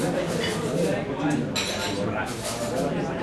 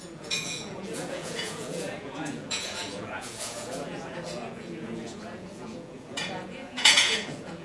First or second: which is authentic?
first